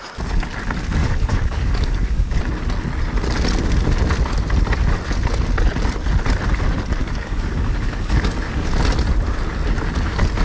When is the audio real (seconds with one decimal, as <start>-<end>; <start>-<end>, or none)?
0.0-1.0; 2.4-7.0; 8.7-10.4